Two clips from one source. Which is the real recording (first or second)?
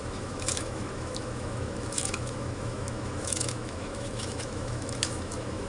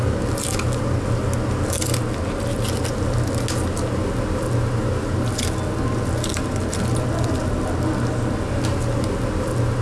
second